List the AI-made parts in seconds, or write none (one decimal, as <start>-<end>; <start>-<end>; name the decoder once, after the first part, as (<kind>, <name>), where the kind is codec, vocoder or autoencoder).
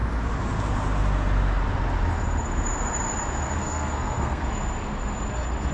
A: 3.6-4.4 (codec, SNAC)